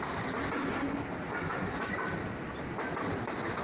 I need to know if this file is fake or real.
real